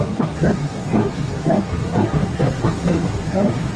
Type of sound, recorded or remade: remade